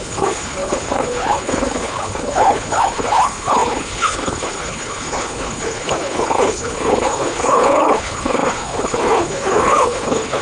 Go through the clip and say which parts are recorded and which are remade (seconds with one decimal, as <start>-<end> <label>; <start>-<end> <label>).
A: 0.0-10.4 remade